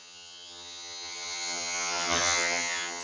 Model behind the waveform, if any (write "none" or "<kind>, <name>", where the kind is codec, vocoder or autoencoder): vocoder, HiFi-GAN